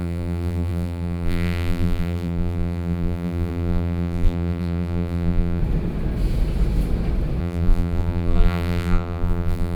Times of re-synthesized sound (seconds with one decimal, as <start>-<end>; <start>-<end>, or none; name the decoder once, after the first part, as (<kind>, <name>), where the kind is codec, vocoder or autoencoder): 0.0-5.6 (vocoder, BigVGAN v2); 7.4-9.8